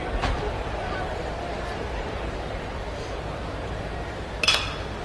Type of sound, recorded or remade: recorded